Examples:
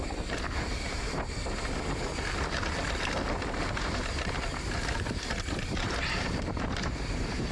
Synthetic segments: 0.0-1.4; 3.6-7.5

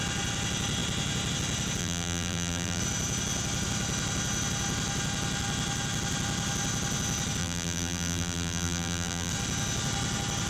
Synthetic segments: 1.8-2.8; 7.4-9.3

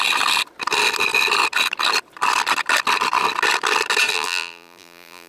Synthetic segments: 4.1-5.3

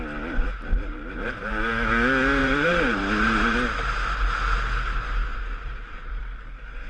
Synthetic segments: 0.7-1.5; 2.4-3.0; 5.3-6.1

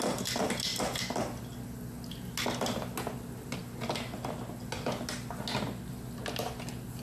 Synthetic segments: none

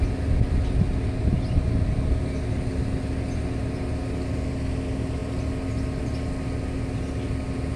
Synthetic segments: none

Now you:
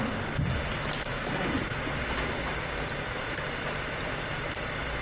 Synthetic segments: 1.1-4.1